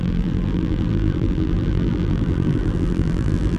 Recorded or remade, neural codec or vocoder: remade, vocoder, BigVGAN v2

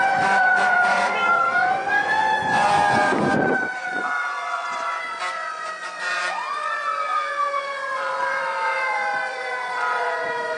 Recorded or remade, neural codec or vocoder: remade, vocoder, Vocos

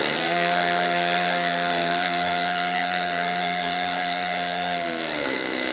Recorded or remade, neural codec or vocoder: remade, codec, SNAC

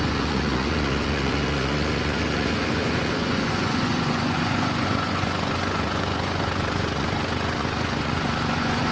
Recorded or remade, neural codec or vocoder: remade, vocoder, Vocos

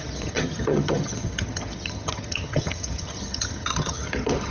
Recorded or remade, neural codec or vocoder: remade, vocoder, HiFi-GAN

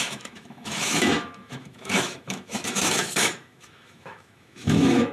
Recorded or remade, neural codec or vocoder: remade, autoencoder, DAC-VAE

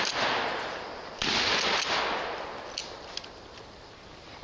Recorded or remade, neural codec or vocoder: recorded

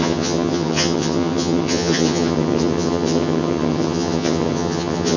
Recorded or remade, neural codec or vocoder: remade, vocoder, HiFi-GAN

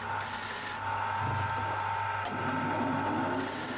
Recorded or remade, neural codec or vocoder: recorded